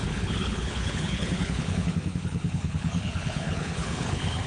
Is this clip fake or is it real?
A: fake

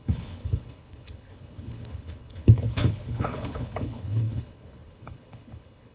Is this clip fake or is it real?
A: fake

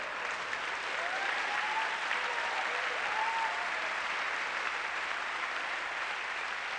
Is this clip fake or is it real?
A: real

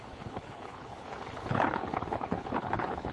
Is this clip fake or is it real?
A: fake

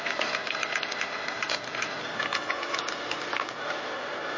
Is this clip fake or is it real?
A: real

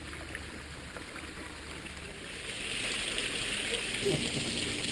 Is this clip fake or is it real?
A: real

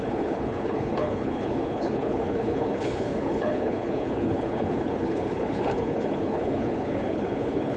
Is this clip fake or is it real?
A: fake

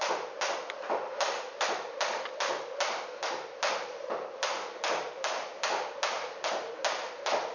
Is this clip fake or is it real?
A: real